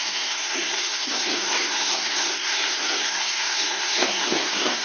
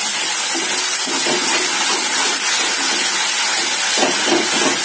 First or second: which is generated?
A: first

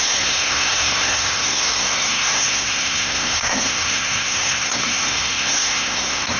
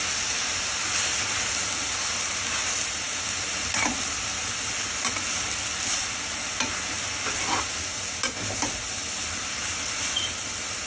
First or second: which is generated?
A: first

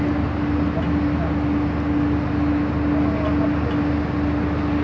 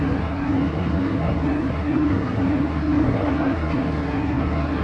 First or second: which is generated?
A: second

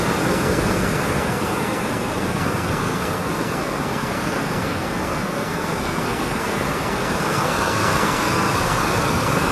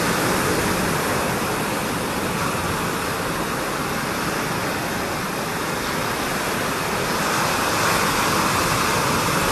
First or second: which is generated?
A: first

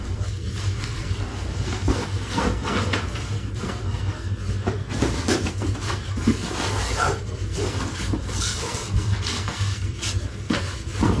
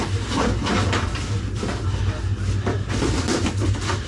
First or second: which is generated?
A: first